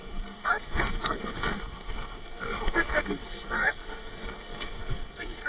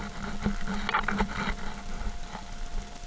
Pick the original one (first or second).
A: second